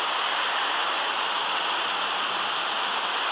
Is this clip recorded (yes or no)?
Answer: yes